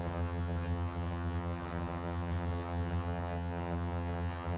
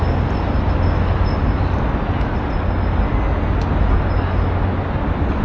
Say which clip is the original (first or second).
second